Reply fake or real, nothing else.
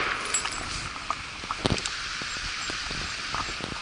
fake